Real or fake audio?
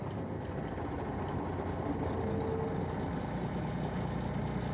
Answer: real